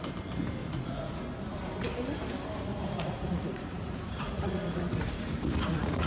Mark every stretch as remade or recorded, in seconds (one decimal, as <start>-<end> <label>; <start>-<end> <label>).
0.0-0.6 recorded; 0.6-1.2 remade; 1.2-2.7 recorded; 2.7-6.1 remade